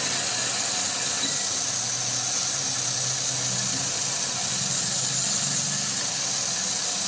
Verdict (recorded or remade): recorded